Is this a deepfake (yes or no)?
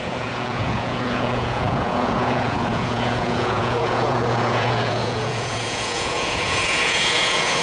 yes